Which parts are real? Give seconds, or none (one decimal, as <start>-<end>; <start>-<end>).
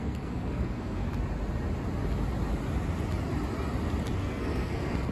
1.1-4.2